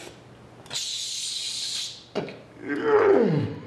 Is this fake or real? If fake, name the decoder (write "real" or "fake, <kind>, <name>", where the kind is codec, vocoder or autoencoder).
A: real